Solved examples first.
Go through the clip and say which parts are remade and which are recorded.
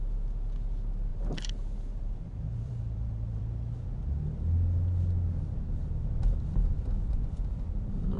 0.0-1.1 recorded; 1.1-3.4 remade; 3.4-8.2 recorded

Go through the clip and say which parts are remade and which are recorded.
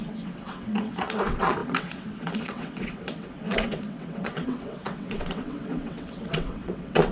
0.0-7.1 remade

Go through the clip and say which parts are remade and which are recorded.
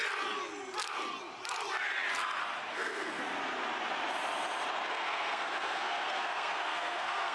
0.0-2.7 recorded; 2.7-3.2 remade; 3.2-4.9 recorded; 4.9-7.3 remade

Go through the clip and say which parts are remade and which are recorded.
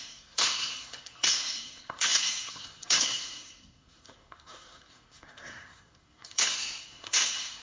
0.0-7.6 remade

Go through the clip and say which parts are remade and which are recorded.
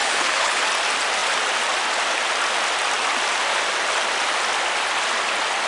0.0-0.6 remade; 0.6-5.7 recorded